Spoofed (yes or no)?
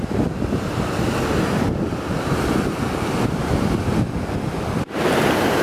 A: no